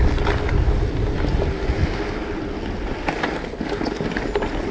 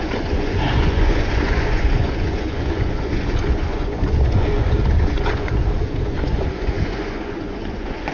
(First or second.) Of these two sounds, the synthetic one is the second